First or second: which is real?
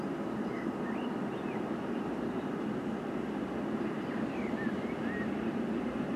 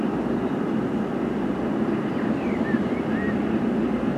second